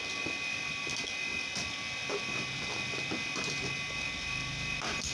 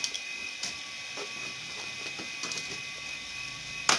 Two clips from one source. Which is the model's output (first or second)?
second